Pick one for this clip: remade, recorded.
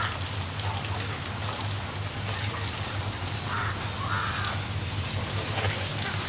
recorded